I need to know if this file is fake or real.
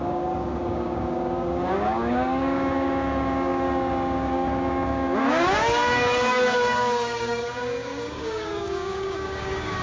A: fake